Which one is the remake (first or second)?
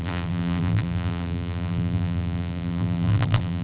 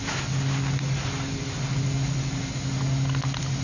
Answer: first